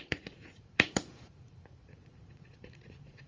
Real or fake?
fake